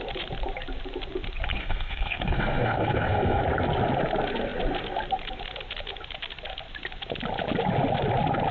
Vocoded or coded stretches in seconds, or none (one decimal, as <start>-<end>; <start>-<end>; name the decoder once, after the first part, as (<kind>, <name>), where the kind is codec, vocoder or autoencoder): 1.6-3.4 (codec, SNAC)